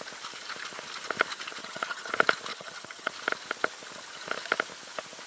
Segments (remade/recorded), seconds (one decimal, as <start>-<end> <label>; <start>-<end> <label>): 0.0-1.6 recorded; 1.6-2.1 remade; 2.1-2.5 recorded; 2.5-3.1 remade; 3.1-5.3 recorded